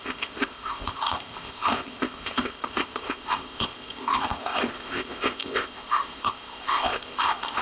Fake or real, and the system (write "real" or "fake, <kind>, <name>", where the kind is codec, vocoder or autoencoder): fake, codec, ZipCodec